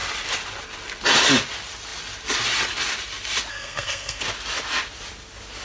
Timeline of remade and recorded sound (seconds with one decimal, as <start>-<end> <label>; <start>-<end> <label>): 0.0-3.5 recorded; 3.5-4.2 remade; 4.2-5.6 recorded